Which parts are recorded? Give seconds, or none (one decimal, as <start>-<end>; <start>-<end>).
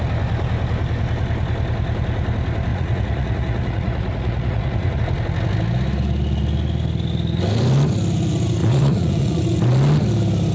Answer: 0.0-2.7; 5.0-8.6; 9.4-10.5